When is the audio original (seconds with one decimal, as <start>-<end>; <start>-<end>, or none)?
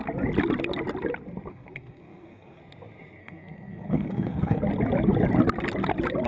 0.0-1.5; 2.6-3.2; 4.6-6.3